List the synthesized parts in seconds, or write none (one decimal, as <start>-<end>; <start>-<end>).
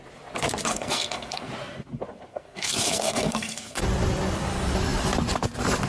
0.7-1.5; 2.3-3.8